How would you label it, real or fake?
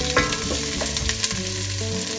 real